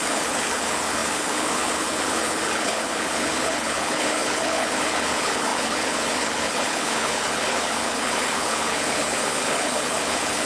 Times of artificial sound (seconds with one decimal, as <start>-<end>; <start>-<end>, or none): 0.0-10.5